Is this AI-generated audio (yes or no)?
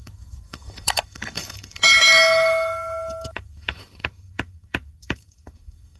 yes